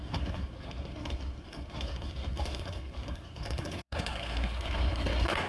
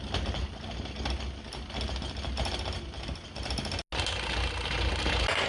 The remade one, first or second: first